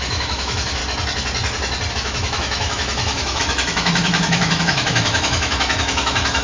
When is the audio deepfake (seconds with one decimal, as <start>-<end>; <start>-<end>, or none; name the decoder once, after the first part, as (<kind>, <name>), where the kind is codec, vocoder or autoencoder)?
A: 0.0-0.8 (autoencoder, DAC-VAE); 1.9-6.4